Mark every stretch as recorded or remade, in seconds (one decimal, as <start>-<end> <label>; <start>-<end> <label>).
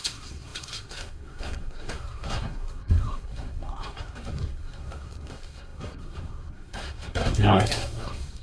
0.0-8.4 remade